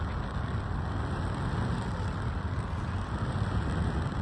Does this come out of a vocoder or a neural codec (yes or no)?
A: no